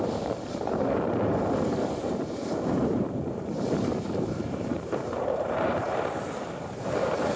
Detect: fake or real fake